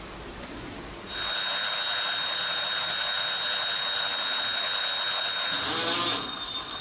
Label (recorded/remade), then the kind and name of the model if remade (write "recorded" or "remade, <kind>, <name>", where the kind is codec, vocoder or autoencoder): recorded